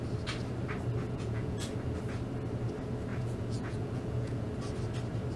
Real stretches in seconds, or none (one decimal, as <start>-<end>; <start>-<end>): 0.0-1.0; 1.7-3.1; 4.5-5.4